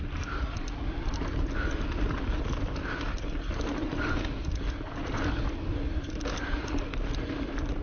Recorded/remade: recorded